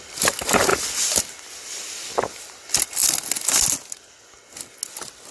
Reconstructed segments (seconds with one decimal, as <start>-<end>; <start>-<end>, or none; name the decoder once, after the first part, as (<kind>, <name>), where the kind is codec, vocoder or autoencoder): none